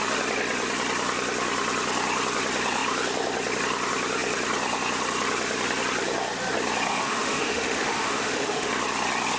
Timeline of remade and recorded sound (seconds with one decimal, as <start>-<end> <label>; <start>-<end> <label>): 0.0-6.9 recorded; 6.9-8.7 remade; 8.7-9.4 recorded